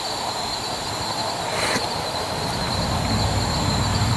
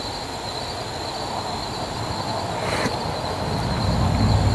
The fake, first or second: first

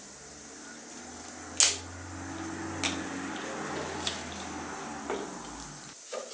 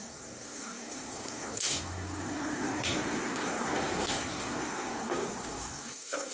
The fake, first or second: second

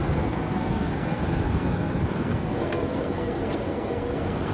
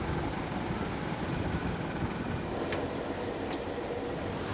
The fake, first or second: first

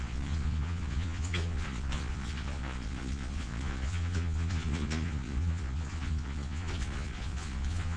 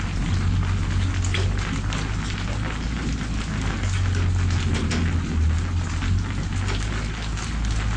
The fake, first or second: first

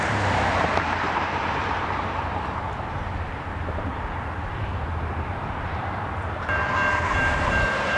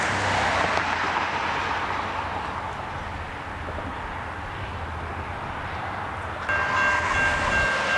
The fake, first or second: first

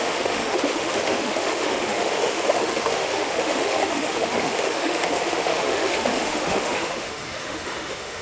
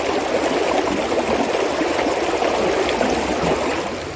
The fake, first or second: first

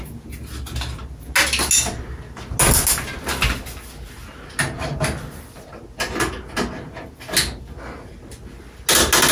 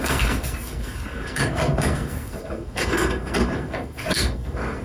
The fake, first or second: second